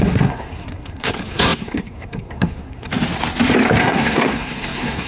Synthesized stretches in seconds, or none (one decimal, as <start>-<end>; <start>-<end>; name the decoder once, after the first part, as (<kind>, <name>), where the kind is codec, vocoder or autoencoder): 0.0-2.9 (codec, SNAC); 3.8-5.1